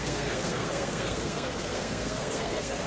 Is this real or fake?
fake